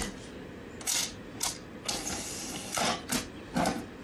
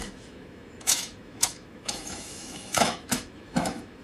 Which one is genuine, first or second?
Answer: first